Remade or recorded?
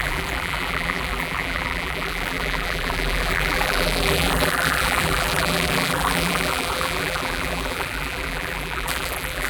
remade